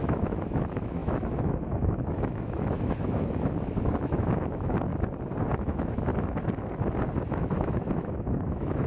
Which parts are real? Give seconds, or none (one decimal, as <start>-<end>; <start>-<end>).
4.9-5.5; 6.1-7.3